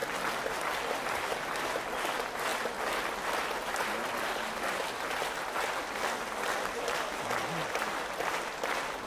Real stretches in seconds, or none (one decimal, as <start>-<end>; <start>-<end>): 0.0-9.1